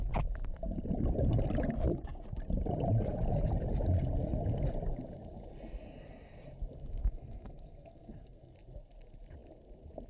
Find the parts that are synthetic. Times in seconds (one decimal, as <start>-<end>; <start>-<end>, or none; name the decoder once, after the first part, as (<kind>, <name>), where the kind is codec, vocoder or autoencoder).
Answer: 7.0-8.5 (codec, SNAC)